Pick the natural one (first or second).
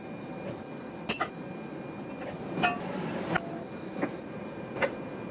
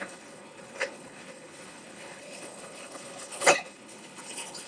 first